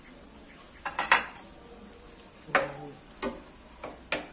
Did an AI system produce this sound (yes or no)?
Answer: no